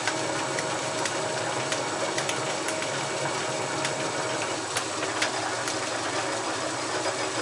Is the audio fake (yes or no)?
no